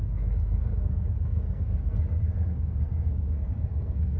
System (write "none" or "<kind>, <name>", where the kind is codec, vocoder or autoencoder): codec, SNAC